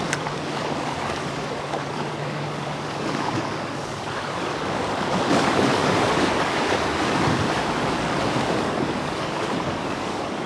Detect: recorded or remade remade